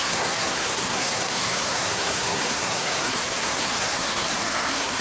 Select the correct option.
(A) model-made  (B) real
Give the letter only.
A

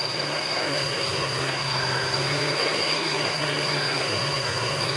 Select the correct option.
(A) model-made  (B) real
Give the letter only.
A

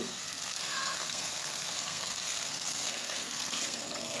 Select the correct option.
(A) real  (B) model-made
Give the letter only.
B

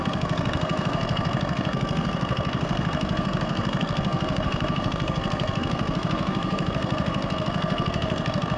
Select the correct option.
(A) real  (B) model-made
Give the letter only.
B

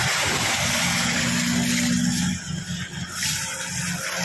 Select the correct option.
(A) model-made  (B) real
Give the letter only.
B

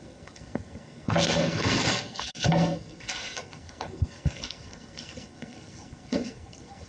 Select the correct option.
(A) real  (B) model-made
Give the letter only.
B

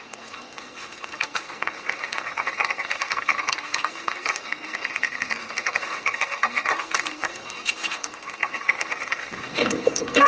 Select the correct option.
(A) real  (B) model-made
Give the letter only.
B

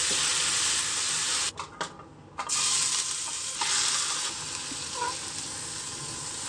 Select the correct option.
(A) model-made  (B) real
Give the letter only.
B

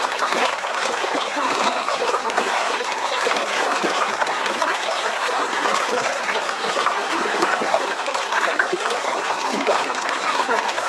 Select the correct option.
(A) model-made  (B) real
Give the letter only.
A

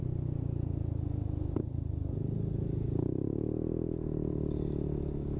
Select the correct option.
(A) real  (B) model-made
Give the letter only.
A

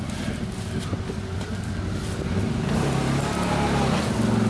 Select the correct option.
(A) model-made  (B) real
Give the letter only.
B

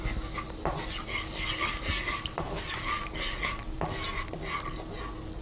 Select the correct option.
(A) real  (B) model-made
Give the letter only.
A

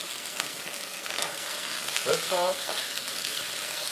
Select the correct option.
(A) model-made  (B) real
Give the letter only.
A